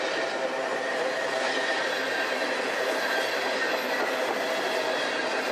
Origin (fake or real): real